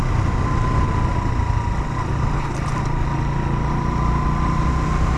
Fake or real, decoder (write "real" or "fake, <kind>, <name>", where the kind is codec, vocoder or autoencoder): real